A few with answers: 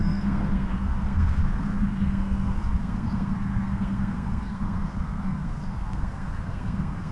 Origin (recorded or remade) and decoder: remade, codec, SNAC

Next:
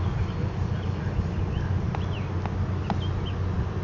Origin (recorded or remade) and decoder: recorded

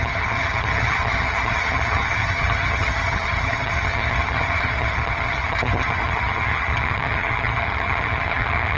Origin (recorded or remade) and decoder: remade, vocoder, HiFi-GAN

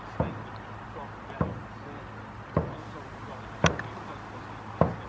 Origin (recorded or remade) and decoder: recorded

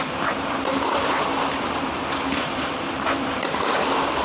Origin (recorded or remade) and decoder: remade, vocoder, BigVGAN v2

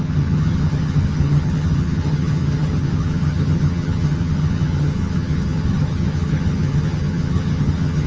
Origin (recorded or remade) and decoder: remade, vocoder, HiFi-GAN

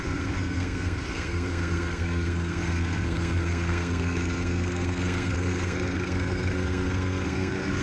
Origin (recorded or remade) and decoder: remade, codec, SNAC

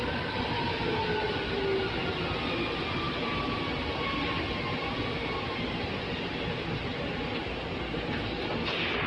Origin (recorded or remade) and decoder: recorded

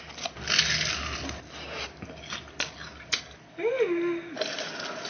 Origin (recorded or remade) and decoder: recorded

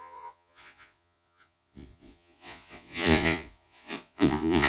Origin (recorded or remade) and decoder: remade, vocoder, Vocos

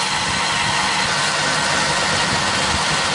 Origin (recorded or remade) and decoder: recorded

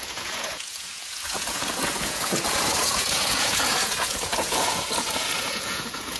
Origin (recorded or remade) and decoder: remade, vocoder, Vocos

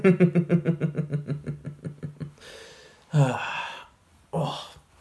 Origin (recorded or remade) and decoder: recorded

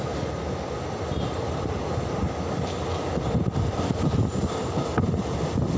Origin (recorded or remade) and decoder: recorded